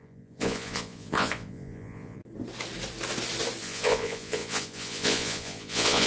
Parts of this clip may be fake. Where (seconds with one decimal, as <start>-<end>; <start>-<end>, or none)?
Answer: 0.0-2.2; 3.6-6.1

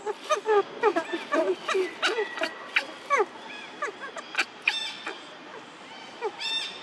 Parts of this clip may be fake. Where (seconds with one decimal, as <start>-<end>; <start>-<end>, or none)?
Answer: none

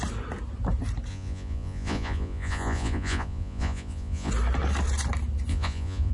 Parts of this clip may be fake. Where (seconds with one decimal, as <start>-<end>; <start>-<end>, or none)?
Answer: 1.1-4.3; 5.5-6.1

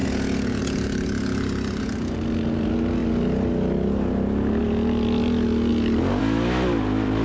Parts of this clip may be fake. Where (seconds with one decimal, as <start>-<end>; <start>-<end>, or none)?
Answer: none

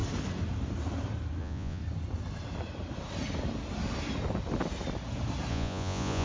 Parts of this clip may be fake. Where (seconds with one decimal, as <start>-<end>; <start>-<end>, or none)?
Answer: 1.4-1.8; 5.5-6.2